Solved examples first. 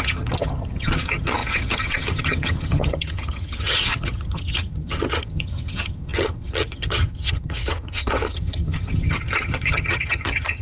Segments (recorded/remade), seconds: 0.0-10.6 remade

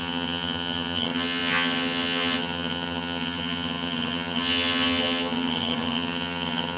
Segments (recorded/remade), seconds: 0.0-6.8 remade